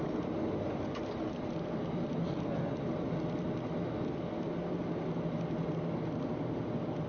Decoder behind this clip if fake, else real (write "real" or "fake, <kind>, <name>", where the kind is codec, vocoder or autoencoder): real